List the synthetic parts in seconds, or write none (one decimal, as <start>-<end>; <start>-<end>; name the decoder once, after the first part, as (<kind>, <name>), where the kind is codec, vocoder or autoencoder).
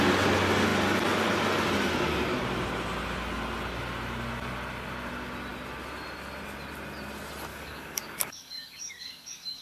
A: 7.5-9.6 (codec, DAC)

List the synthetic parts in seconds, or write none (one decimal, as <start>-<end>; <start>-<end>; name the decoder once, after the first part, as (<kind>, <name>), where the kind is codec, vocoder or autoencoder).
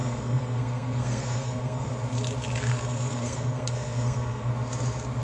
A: 0.0-1.9 (codec, SNAC); 2.7-4.5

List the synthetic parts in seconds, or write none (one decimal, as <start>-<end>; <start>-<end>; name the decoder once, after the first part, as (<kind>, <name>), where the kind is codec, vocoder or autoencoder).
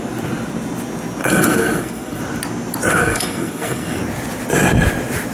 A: 1.2-2.2 (codec, SNAC); 2.9-4.0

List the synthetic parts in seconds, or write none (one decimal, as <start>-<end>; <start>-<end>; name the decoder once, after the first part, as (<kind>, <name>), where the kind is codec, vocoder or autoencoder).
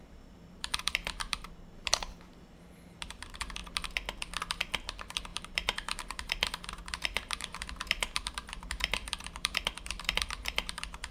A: 0.0-3.6 (vocoder, BigVGAN v2); 4.5-11.1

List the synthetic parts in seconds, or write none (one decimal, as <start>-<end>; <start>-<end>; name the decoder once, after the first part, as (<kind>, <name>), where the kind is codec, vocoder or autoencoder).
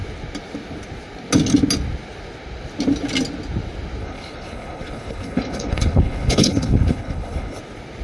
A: 4.0-7.6 (codec, HILCodec)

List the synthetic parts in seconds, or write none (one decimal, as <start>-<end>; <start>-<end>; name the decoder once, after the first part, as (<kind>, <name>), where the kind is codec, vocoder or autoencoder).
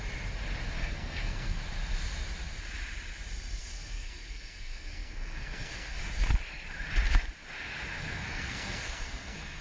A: 0.8-1.6 (codec, SNAC); 3.6-6.1; 7.9-9.6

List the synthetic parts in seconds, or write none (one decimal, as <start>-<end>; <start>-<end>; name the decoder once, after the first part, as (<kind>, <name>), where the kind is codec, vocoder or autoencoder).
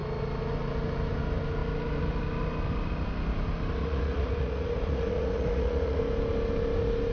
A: 3.8-6.0 (vocoder, Vocos)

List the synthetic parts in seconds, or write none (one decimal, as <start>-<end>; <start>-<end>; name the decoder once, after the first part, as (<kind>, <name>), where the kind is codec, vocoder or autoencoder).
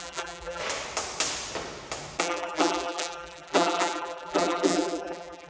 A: 0.0-0.6 (vocoder, BigVGAN v2); 2.2-5.5